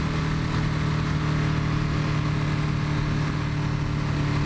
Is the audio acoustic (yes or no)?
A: yes